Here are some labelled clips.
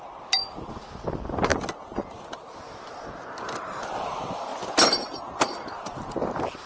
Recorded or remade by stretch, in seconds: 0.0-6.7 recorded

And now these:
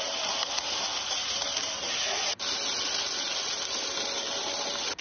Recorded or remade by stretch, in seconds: 0.0-5.0 recorded

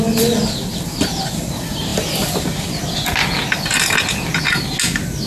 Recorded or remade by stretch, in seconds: 0.0-5.3 recorded